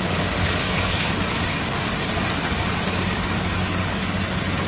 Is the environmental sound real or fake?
fake